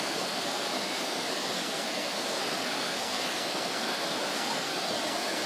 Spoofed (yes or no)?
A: yes